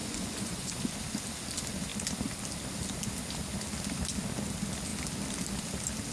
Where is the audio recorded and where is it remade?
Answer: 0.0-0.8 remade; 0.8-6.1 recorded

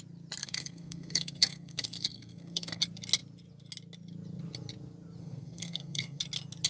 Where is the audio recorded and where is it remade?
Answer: 0.0-0.4 recorded; 0.4-2.8 remade; 2.8-5.2 recorded; 5.2-6.2 remade; 6.2-6.7 recorded